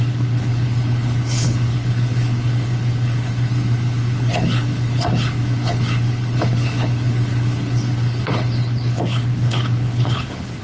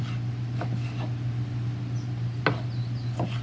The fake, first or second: first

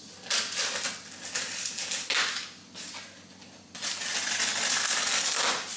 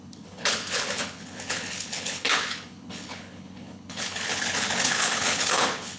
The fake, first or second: second